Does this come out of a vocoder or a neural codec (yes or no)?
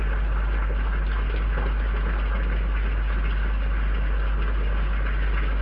no